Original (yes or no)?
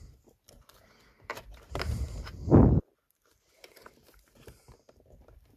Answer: no